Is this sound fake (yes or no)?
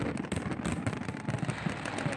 no